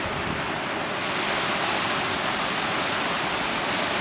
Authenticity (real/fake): real